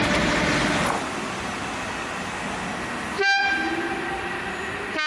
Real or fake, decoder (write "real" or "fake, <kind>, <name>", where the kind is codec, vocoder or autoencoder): real